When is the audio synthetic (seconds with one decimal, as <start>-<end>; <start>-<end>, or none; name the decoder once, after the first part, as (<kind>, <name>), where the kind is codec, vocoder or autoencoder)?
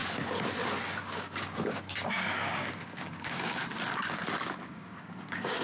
1.0-3.6 (codec, DAC); 4.7-5.6